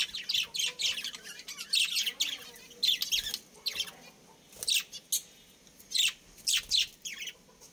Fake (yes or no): no